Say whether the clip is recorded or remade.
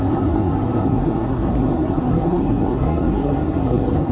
remade